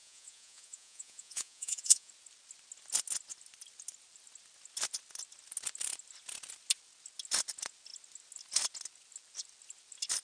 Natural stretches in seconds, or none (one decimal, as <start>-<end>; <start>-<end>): 2.1-10.2